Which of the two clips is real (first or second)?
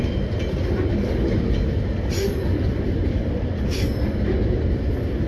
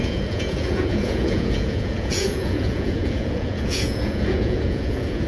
first